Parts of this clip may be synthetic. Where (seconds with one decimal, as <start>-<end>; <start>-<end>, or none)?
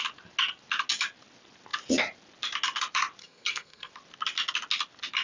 3.2-3.9